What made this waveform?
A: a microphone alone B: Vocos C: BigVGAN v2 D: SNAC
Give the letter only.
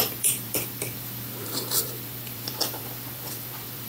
C